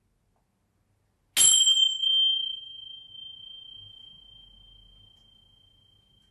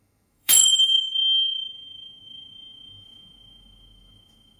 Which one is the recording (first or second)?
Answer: first